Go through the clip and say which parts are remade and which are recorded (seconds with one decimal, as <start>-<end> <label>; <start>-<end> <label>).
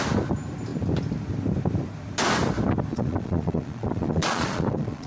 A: 0.0-2.9 recorded; 2.9-5.1 remade